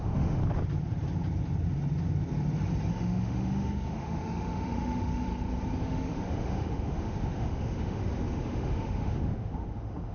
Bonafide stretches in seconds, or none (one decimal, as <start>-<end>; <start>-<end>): 0.4-2.9; 5.3-5.8